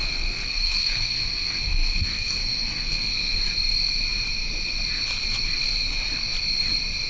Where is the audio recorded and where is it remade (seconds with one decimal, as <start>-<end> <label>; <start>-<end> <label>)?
0.0-3.4 remade; 3.4-7.1 recorded